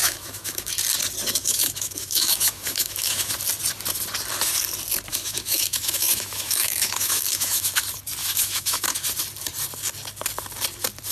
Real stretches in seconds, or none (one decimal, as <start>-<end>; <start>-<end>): 0.7-1.4; 3.3-5.1; 7.7-8.2; 9.0-11.1